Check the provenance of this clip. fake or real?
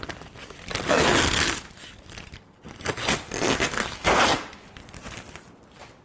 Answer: real